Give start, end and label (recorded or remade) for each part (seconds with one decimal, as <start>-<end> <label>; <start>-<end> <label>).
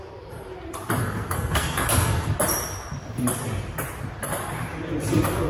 0.0-1.0 recorded; 1.0-2.3 remade; 2.3-5.5 recorded